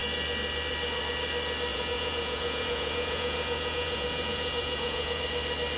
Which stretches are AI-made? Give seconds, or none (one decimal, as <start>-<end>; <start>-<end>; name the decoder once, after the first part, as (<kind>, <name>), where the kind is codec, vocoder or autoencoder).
1.7-5.2 (vocoder, Vocos)